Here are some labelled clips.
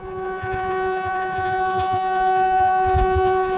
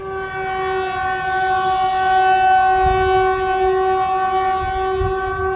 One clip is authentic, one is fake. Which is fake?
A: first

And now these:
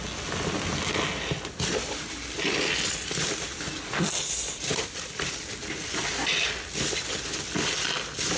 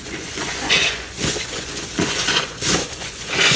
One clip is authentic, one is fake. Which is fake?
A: second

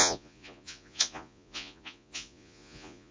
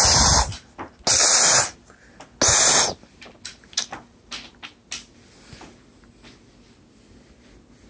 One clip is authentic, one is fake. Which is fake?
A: first